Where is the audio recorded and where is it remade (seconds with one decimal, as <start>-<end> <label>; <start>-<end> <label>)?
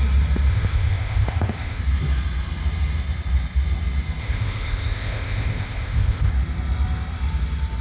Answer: 0.0-0.5 recorded; 0.5-1.8 remade; 1.8-4.2 recorded; 4.2-6.3 remade; 6.3-7.8 recorded